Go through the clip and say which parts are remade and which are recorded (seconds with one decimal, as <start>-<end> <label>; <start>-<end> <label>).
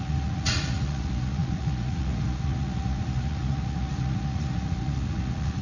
0.0-5.6 remade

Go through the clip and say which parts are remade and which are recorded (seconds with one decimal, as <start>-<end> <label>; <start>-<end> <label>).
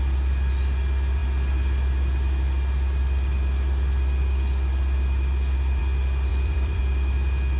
0.0-6.3 recorded; 6.3-6.8 remade; 6.8-7.6 recorded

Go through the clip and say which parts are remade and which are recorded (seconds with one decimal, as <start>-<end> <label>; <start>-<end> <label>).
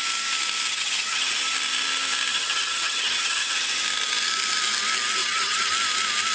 0.0-0.7 recorded; 0.7-1.3 remade; 1.3-2.3 recorded; 2.3-3.7 remade; 3.7-5.2 recorded; 5.2-5.7 remade; 5.7-6.3 recorded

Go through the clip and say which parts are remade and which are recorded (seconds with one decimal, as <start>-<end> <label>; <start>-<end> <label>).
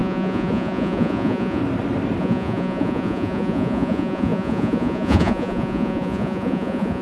0.0-1.6 remade; 1.6-2.2 recorded; 2.2-7.0 remade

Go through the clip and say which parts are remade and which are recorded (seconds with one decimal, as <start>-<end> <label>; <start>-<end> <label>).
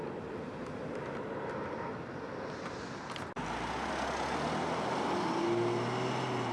0.0-6.5 recorded